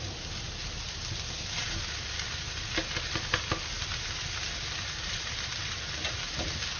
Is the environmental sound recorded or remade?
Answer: recorded